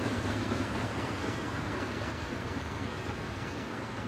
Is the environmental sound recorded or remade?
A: remade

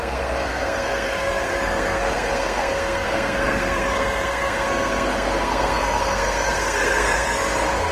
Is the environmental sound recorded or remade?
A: remade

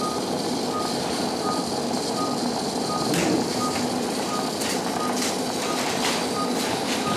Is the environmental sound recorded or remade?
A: recorded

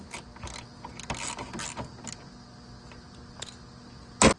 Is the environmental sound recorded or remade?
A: recorded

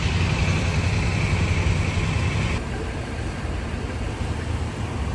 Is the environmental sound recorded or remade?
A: recorded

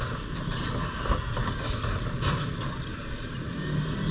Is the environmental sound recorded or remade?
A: recorded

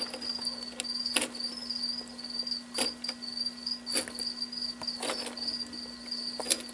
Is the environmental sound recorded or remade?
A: recorded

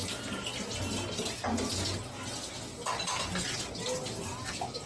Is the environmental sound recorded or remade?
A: recorded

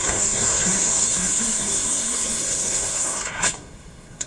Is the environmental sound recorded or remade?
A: remade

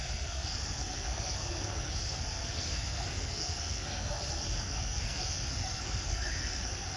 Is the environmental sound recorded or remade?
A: remade